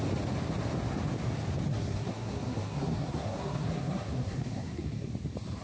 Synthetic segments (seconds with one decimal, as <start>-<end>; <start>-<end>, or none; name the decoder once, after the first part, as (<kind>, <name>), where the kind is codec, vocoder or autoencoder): 1.7-5.1 (codec, SNAC)